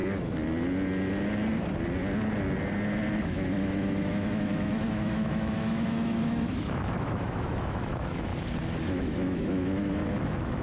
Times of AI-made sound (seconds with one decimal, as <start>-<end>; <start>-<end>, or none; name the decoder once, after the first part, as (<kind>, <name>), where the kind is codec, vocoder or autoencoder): 3.2-8.3 (autoencoder, DAC-VAE); 8.9-10.6